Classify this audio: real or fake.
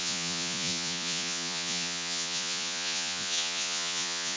fake